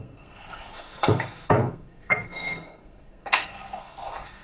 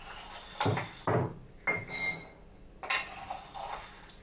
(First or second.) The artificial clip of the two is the first